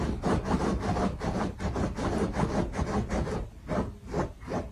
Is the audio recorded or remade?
recorded